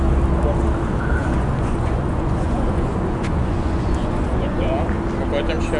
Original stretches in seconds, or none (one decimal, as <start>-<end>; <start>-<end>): 0.0-1.2; 4.7-5.8